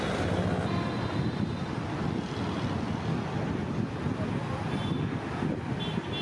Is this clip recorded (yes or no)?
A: yes